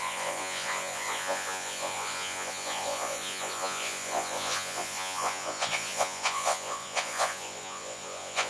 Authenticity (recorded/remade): remade